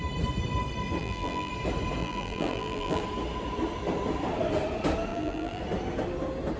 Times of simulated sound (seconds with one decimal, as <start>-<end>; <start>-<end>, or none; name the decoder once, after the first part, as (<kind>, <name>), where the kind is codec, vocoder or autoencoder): 1.0-1.5 (vocoder, BigVGAN v2); 2.0-3.0; 5.1-5.6